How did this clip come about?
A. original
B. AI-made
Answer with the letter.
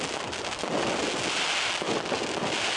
A